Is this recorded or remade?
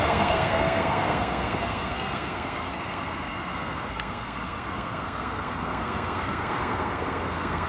remade